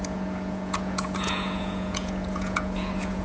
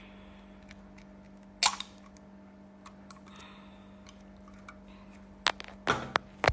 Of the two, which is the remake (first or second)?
first